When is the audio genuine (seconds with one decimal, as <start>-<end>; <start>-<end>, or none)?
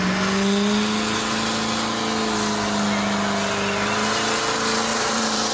0.0-4.9